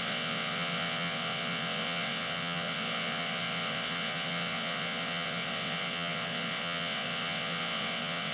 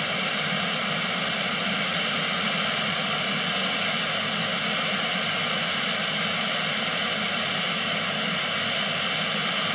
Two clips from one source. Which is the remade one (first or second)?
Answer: first